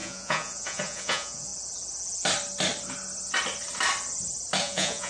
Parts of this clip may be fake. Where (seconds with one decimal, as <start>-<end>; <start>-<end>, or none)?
0.0-1.5; 4.6-5.1